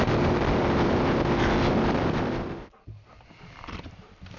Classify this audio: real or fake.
real